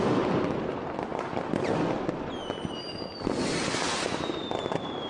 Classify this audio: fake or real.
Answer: real